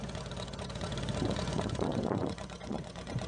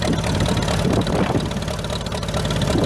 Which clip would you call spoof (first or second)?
first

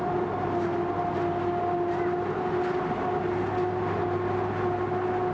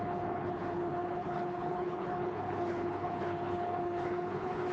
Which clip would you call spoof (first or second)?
second